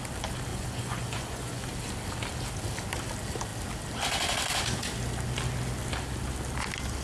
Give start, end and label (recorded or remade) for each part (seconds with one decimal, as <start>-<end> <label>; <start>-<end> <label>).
0.0-0.5 recorded; 0.5-1.7 remade; 1.7-7.0 recorded